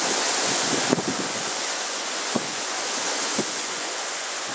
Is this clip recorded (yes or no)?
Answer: no